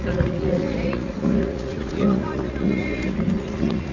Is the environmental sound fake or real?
fake